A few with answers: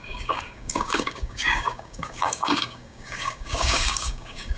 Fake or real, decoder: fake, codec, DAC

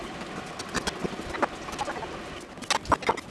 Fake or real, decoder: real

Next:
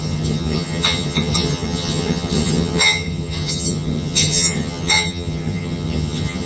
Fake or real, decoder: fake, vocoder, HiFi-GAN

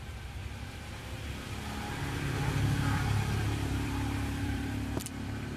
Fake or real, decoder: fake, vocoder, BigVGAN v2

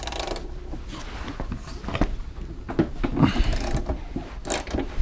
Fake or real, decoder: real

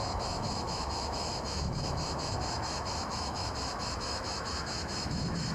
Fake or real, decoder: fake, autoencoder, DAC-VAE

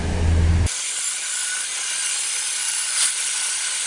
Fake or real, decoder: real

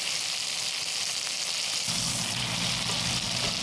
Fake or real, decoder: real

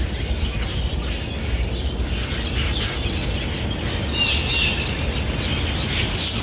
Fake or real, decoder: real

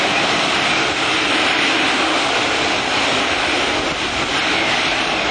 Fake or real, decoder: real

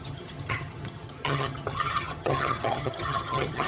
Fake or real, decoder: fake, vocoder, HiFi-GAN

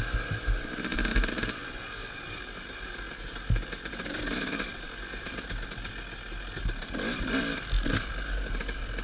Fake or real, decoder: real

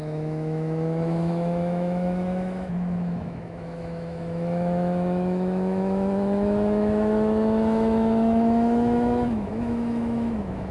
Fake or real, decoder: fake, autoencoder, DAC-VAE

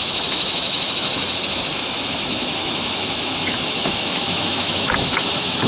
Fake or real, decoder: fake, autoencoder, DAC-VAE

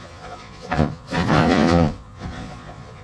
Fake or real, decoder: fake, vocoder, Vocos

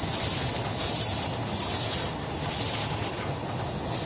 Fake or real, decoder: real